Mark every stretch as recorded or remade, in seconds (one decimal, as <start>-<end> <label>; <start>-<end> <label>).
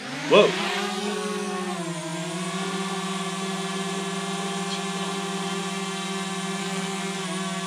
0.0-1.0 recorded; 1.0-1.7 remade; 1.7-6.6 recorded; 6.6-7.2 remade; 7.2-7.7 recorded